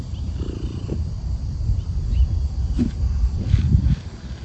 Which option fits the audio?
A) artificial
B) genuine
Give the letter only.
B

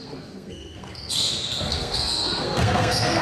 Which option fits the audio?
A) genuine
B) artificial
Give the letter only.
B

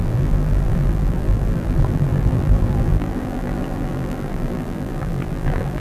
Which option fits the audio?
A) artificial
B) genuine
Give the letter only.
A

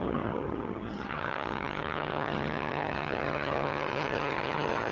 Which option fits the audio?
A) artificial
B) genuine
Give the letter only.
A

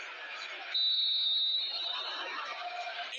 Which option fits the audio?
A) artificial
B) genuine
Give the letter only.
B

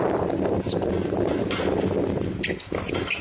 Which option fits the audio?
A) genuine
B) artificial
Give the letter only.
A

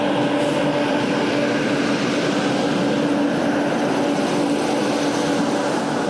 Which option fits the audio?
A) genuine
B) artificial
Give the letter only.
A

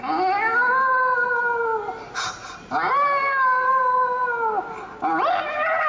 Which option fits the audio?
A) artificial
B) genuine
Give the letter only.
B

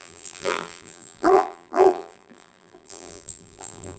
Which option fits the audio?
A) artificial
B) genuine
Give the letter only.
A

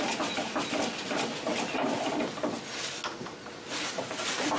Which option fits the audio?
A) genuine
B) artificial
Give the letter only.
A